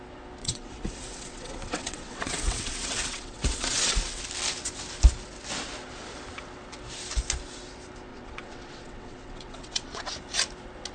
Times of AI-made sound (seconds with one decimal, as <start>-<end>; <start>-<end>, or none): 0.4-4.2; 8.1-10.1